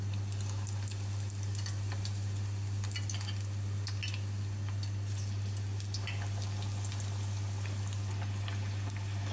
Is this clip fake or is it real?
real